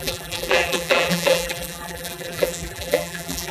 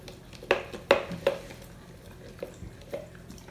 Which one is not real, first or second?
first